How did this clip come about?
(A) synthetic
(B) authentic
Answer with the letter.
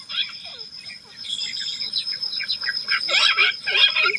A